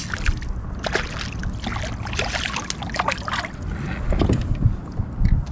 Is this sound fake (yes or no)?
no